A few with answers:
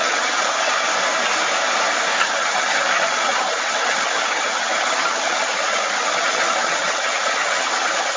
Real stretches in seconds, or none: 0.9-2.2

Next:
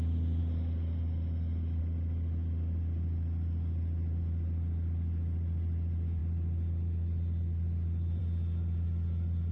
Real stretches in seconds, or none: 0.0-9.5

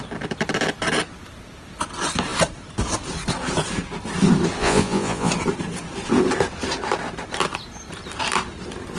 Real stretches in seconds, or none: 0.0-4.6; 5.3-9.0

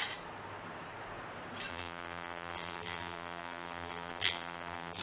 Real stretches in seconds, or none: 0.0-1.7